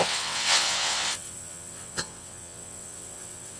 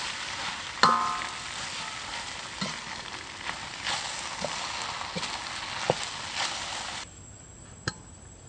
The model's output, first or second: first